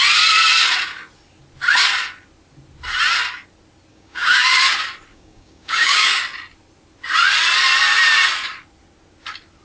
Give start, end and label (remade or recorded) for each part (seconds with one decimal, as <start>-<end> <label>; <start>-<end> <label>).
0.0-3.9 recorded; 3.9-4.5 remade; 4.5-5.1 recorded; 5.1-6.2 remade; 6.2-9.6 recorded